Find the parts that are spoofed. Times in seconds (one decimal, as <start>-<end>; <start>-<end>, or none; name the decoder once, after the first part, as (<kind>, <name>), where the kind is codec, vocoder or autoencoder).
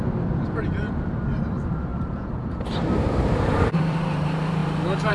0.6-5.1 (vocoder, BigVGAN v2)